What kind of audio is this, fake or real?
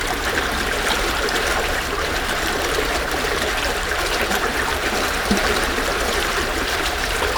fake